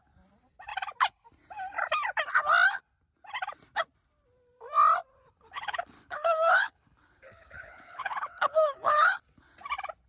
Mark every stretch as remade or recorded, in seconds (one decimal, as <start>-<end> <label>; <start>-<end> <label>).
0.0-5.1 recorded; 5.1-9.2 remade; 9.2-10.1 recorded